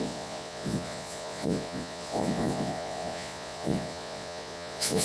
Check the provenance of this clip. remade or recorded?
remade